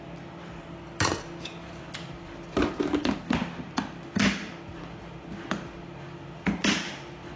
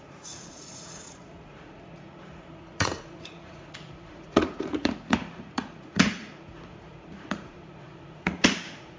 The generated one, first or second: second